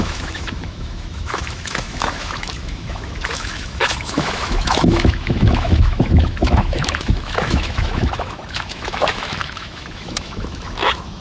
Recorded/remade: remade